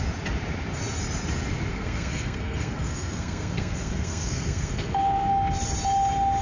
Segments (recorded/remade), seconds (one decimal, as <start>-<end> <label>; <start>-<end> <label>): 0.0-1.7 recorded; 1.7-5.3 remade; 5.3-6.4 recorded